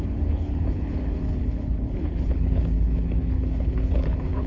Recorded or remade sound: remade